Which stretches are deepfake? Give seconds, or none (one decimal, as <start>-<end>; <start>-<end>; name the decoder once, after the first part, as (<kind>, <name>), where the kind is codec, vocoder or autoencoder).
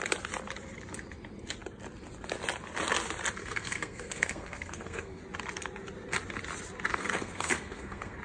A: 3.4-5.2 (codec, SNAC); 6.9-8.2